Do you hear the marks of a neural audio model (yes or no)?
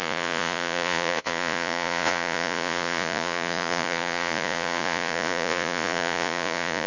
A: yes